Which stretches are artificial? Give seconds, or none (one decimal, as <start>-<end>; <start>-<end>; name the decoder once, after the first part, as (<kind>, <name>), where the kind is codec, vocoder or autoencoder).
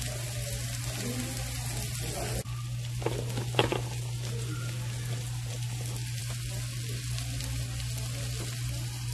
none